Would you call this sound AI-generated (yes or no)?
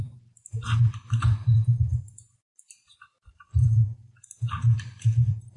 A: yes